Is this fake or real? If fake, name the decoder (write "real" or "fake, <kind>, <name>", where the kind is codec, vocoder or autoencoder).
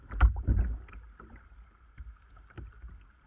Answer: real